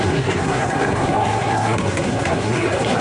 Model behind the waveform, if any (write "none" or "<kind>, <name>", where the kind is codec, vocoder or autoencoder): codec, SNAC